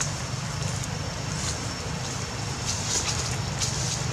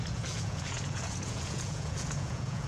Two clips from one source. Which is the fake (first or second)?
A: second